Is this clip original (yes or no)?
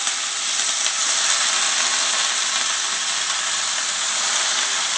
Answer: yes